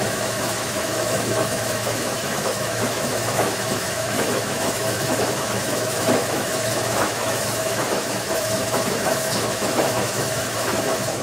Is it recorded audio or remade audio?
remade